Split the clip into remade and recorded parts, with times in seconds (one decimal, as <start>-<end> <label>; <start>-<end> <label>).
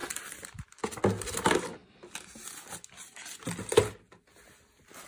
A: 0.0-5.1 recorded